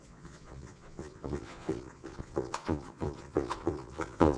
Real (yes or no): no